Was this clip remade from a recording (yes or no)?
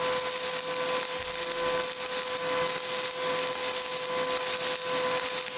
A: no